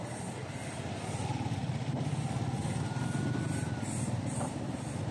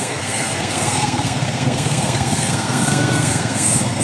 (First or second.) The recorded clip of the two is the first